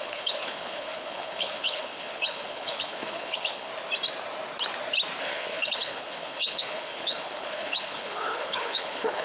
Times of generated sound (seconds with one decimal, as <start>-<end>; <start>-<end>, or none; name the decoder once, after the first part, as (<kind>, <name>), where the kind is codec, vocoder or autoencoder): 0.0-3.7 (codec, HILCodec); 5.2-9.2